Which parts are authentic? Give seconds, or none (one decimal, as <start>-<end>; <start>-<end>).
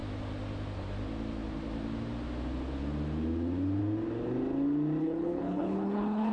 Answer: 0.0-5.0